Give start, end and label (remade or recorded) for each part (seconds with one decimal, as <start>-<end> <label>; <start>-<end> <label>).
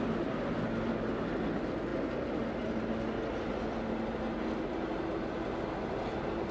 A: 0.0-6.5 recorded